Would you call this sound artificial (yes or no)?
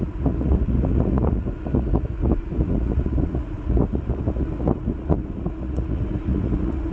yes